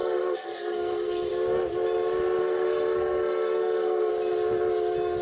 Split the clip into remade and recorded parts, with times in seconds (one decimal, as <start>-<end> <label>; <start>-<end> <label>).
0.0-1.3 remade; 1.3-2.4 recorded; 2.4-4.1 remade; 4.1-5.2 recorded